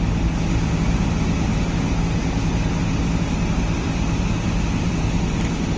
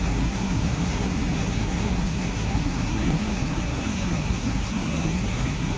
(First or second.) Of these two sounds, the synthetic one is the second